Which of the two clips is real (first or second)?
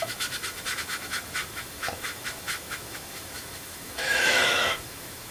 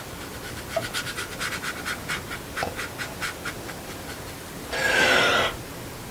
second